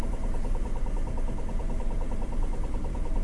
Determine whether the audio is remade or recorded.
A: remade